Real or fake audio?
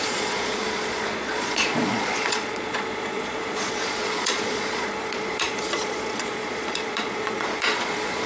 fake